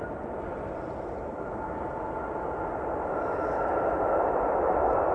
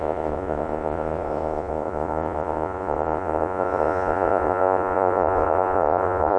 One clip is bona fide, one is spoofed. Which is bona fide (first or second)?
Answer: first